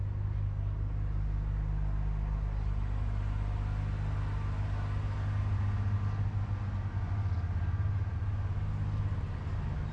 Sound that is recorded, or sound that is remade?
recorded